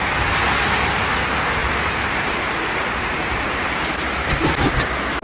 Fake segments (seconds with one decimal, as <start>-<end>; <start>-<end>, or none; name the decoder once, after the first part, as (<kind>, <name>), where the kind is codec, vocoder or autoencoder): 1.6-4.7 (vocoder, BigVGAN v2)